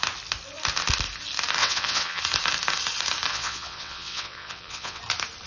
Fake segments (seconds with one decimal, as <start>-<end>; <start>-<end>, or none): 1.6-2.2; 3.3-5.0